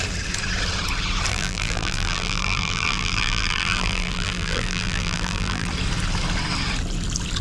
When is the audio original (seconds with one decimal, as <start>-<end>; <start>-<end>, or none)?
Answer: 0.0-1.3; 5.7-7.4